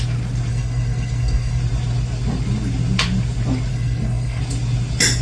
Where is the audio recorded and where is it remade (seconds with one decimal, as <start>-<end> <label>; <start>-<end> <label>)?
0.0-0.5 recorded; 0.5-1.6 remade; 1.6-3.7 recorded; 3.7-4.4 remade; 4.4-5.2 recorded